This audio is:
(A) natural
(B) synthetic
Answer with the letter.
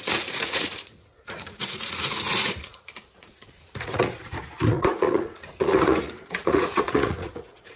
B